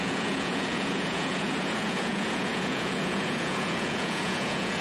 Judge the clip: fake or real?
fake